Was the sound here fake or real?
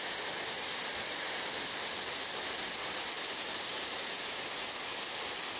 real